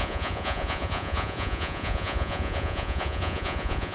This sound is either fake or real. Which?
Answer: fake